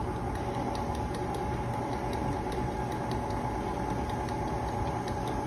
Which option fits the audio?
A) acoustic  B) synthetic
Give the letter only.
A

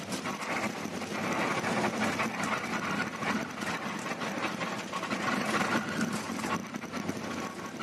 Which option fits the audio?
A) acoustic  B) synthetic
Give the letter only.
A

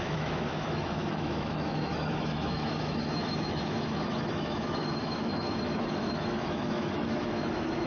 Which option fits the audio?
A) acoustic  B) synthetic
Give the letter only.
B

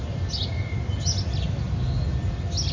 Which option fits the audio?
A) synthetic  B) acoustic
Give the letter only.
B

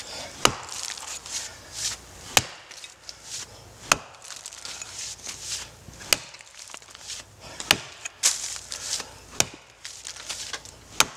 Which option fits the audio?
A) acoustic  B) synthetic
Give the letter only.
A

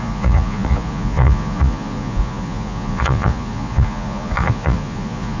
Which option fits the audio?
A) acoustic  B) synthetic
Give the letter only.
B